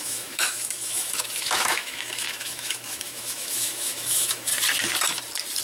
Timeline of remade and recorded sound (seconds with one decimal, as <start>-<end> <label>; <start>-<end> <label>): 0.0-4.5 remade; 4.5-5.6 recorded

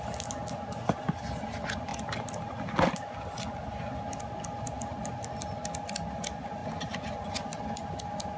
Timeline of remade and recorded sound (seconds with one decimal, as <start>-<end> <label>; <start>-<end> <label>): 0.0-4.9 recorded; 4.9-5.6 remade; 5.6-6.6 recorded; 6.6-7.2 remade; 7.2-8.4 recorded

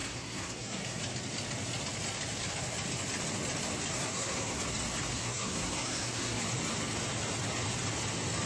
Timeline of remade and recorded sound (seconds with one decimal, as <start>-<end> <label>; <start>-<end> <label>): 0.0-1.0 remade; 1.0-3.9 recorded; 3.9-4.6 remade; 4.6-5.1 recorded; 5.1-6.4 remade; 6.4-8.5 recorded

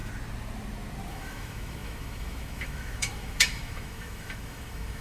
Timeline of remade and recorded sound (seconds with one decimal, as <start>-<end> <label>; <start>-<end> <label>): 0.0-1.1 recorded; 1.1-5.0 remade